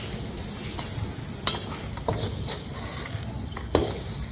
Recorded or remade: recorded